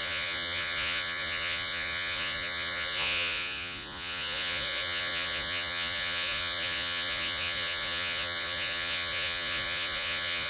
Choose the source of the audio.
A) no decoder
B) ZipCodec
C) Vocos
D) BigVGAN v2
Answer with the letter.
C